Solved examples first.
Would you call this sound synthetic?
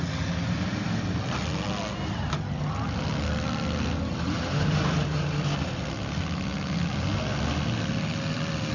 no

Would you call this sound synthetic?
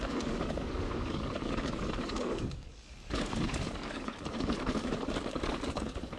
yes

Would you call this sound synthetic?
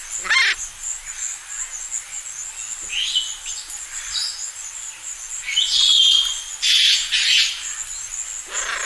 no